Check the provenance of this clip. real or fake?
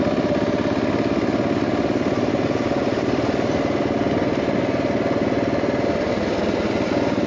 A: real